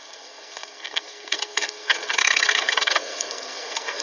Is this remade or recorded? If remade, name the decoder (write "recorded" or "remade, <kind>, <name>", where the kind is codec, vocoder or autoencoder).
remade, codec, SNAC